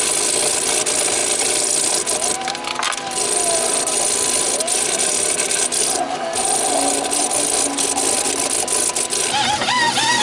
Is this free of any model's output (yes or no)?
yes